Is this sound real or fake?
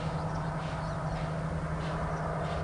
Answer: real